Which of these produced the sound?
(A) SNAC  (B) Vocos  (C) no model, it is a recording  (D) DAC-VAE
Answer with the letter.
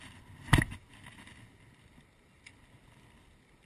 C